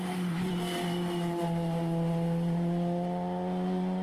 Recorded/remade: recorded